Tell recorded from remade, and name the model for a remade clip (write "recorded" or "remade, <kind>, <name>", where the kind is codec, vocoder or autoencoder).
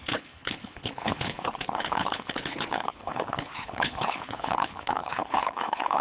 remade, codec, HILCodec